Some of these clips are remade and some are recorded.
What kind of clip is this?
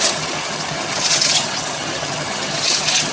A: remade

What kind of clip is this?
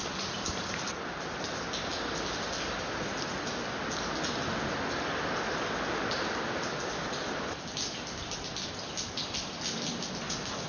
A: recorded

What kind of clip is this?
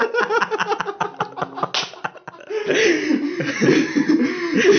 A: recorded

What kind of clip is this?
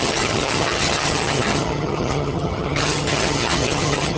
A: remade